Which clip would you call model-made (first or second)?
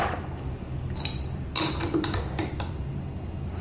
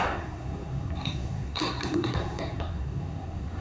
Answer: second